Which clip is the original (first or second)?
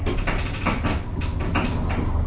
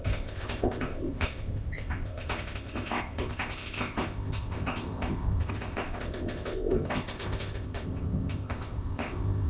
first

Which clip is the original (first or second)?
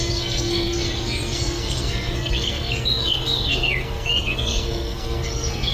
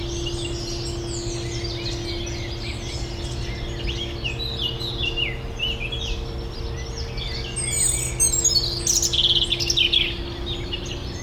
second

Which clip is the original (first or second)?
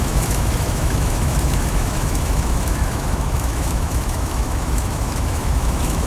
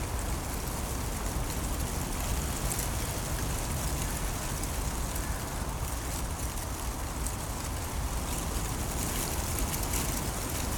second